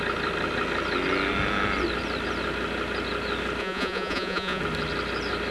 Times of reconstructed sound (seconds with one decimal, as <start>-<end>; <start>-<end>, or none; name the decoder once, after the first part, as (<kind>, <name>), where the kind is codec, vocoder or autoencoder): 3.6-4.6 (vocoder, Vocos)